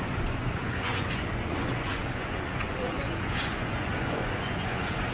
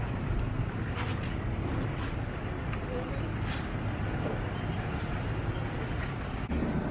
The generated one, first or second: first